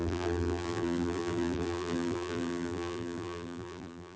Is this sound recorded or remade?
remade